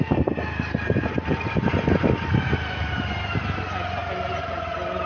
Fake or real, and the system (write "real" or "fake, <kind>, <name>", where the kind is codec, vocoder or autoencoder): real